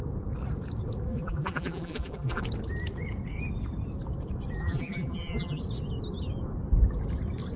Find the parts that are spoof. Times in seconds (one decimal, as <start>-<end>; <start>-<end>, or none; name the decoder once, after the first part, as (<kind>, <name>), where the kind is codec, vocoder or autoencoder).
1.1-2.4 (vocoder, BigVGAN v2); 4.6-5.6